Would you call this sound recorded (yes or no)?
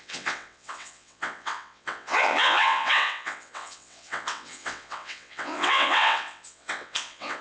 no